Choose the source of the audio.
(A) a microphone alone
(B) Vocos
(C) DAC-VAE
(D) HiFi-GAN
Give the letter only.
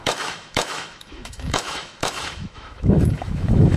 C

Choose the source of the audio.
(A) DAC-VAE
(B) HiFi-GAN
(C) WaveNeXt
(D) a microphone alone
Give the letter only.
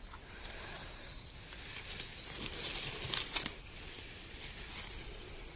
D